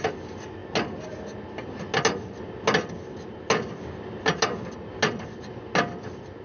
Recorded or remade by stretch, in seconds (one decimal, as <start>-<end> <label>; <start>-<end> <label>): 0.0-6.4 recorded